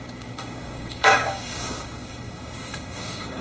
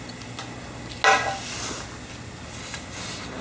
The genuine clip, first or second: second